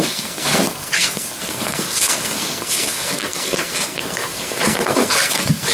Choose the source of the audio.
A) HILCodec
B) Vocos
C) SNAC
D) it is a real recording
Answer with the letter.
C